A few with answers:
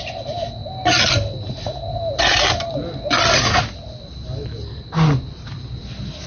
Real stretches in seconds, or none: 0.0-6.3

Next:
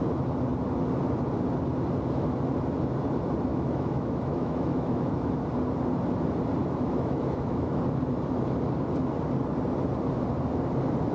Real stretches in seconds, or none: 0.0-3.5; 5.3-6.6; 7.8-11.1